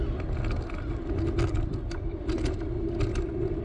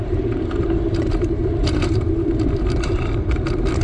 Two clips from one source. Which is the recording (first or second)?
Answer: first